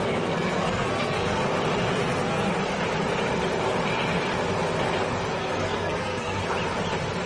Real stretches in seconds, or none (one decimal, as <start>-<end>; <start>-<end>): 1.4-1.9; 2.5-5.3; 6.4-7.3